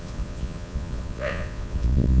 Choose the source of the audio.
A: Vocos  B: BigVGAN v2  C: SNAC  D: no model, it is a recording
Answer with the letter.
A